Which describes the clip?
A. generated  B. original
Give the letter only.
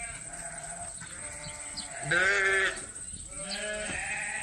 B